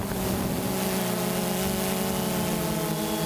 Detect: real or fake real